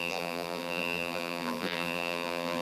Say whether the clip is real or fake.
fake